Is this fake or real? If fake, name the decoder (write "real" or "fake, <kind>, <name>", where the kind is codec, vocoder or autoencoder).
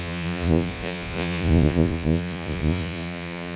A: fake, vocoder, Vocos